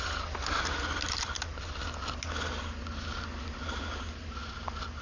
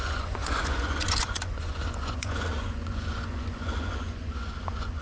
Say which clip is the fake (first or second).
second